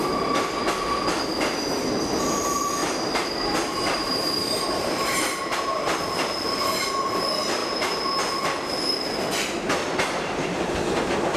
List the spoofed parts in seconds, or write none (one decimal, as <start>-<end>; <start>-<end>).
2.8-5.8; 7.6-8.3